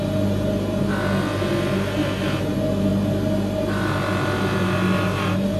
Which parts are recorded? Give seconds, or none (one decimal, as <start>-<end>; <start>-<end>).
0.0-5.6